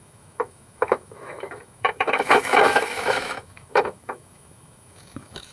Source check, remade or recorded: remade